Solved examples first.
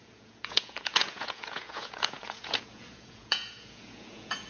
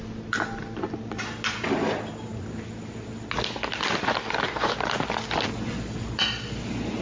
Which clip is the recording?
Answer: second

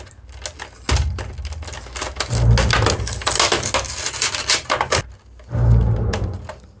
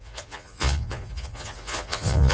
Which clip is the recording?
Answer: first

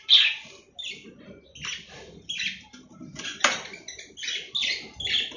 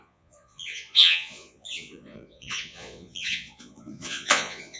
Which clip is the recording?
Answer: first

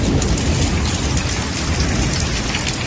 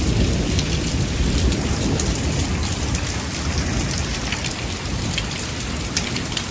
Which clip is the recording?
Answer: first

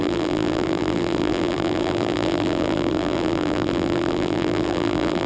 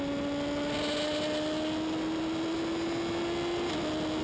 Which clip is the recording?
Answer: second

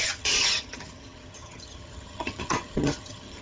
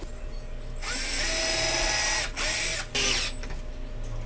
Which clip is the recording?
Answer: second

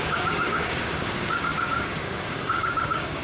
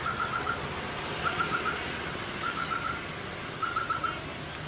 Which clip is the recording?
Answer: second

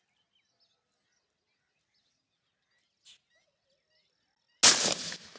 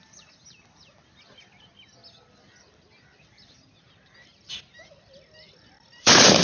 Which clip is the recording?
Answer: first